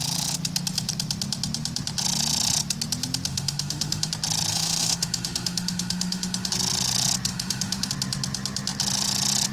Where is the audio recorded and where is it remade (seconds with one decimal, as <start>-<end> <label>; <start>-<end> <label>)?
0.0-3.3 recorded; 3.3-4.1 remade; 4.1-4.5 recorded; 4.5-6.5 remade; 6.5-7.3 recorded; 7.3-7.9 remade; 7.9-9.5 recorded